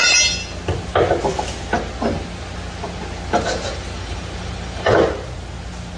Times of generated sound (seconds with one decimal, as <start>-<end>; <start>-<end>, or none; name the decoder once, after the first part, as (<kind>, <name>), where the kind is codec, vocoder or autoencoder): 3.7-4.9 (vocoder, BigVGAN v2)